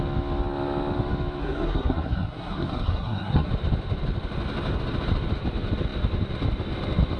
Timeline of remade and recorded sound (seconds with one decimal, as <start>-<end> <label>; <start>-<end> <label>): 0.0-1.4 recorded; 1.4-3.5 remade; 3.5-7.2 recorded

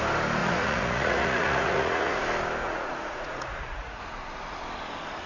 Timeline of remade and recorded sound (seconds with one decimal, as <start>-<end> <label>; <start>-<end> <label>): 0.0-0.4 recorded; 0.4-2.2 remade; 2.2-2.6 recorded; 2.6-4.0 remade; 4.0-5.3 recorded

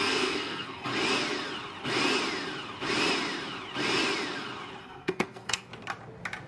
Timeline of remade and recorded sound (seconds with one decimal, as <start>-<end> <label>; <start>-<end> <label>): 0.0-0.9 remade; 0.9-4.8 recorded; 4.8-5.7 remade; 5.7-6.5 recorded